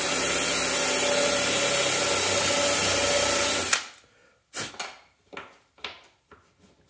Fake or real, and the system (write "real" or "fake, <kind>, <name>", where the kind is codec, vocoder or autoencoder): real